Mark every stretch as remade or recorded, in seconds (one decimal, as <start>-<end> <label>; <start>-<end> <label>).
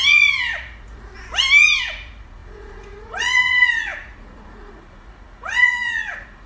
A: 0.0-1.1 remade; 1.1-1.8 recorded; 1.8-6.5 remade